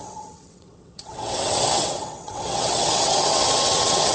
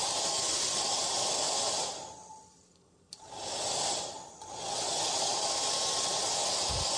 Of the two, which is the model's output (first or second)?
first